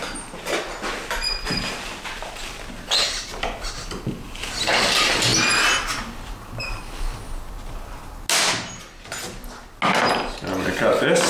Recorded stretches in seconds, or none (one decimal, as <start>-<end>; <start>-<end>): 0.0-11.3